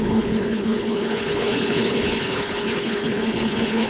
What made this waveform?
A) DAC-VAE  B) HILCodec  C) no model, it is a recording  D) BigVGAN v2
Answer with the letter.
B